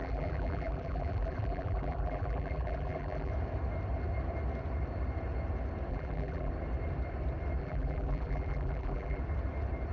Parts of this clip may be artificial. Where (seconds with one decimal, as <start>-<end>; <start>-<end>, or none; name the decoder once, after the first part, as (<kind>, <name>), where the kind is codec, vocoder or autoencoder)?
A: 0.0-3.3 (vocoder, BigVGAN v2); 5.9-6.5; 7.6-9.2